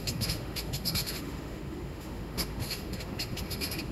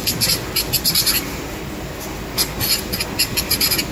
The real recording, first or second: second